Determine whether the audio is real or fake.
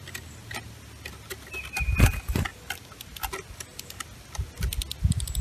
real